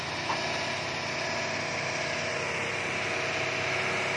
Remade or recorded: recorded